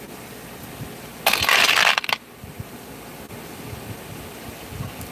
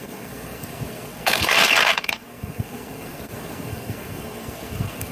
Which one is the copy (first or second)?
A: second